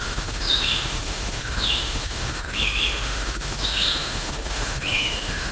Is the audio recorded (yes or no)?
no